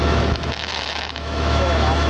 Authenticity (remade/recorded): remade